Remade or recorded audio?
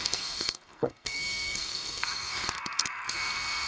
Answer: remade